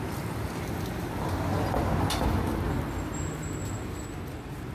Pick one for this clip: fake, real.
real